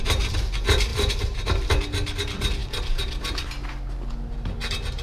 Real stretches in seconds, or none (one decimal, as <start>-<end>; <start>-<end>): 0.0-0.9; 1.7-5.0